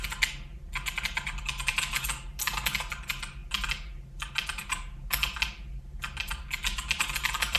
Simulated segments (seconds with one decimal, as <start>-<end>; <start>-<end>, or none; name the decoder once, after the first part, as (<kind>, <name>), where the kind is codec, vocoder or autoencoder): none